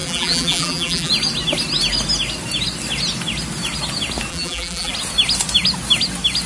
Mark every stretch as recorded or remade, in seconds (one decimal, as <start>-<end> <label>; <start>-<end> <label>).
0.0-1.1 remade; 1.1-4.3 recorded; 4.3-4.9 remade; 4.9-6.5 recorded